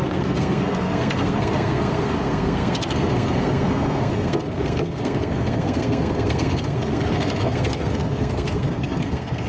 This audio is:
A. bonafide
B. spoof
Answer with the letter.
B